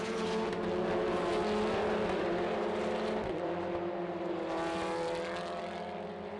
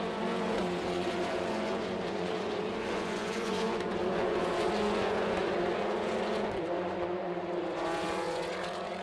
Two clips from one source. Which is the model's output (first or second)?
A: second